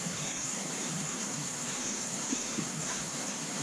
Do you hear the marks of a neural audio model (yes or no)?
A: yes